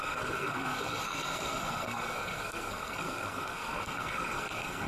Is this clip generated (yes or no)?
yes